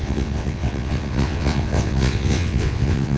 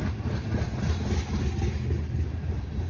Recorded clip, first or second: second